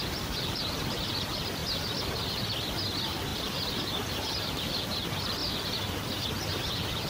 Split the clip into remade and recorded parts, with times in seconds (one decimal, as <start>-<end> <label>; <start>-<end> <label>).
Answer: 0.0-1.6 remade; 1.6-2.7 recorded; 2.7-3.3 remade; 3.3-4.3 recorded; 4.3-5.4 remade; 5.4-6.3 recorded; 6.3-7.1 remade

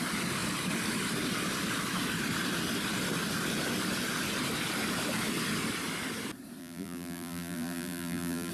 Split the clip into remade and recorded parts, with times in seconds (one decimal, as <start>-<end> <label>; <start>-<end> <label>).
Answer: 0.0-6.6 recorded; 6.6-8.5 remade

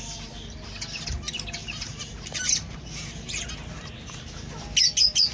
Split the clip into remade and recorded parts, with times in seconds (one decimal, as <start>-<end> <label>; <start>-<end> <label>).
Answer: 0.0-1.6 recorded; 1.6-3.5 remade; 3.5-5.3 recorded